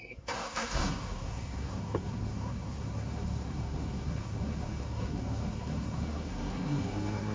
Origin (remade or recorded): remade